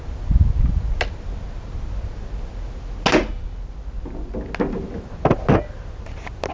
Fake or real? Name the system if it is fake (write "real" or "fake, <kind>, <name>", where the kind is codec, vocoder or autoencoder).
real